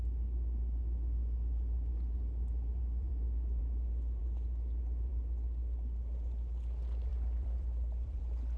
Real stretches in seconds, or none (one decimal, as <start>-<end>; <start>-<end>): 0.0-2.8; 3.6-7.1; 8.2-8.6